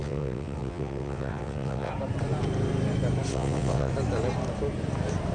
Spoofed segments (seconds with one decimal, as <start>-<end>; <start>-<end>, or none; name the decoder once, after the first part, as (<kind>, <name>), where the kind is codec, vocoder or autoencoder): 0.0-1.9 (vocoder, WaveNeXt); 3.3-3.9